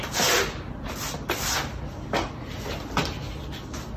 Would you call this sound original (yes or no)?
yes